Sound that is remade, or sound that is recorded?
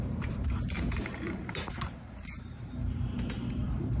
remade